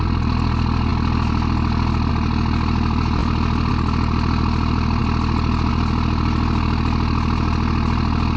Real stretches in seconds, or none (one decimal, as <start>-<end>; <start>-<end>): 0.0-8.4